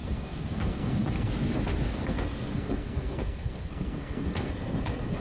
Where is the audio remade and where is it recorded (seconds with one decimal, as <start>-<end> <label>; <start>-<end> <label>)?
0.0-1.3 remade; 1.3-1.9 recorded; 1.9-5.2 remade